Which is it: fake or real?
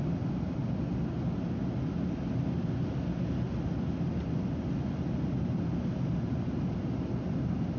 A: real